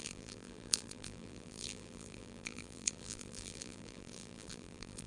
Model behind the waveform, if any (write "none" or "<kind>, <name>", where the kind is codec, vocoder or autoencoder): vocoder, BigVGAN v2